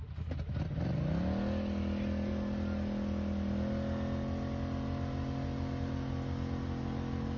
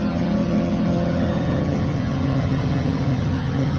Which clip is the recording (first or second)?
first